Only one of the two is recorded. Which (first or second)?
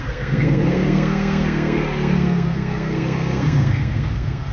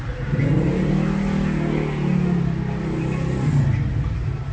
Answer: second